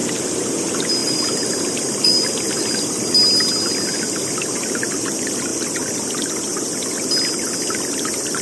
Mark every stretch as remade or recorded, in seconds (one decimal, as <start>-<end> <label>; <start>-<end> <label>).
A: 0.0-1.0 recorded; 1.0-2.9 remade; 2.9-8.4 recorded